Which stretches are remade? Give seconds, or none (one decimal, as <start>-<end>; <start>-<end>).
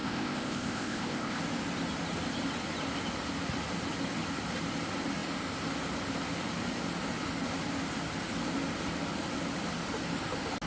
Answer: 0.0-1.4